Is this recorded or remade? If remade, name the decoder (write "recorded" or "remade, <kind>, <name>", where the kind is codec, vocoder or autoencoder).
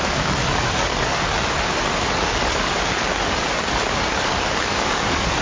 remade, codec, DAC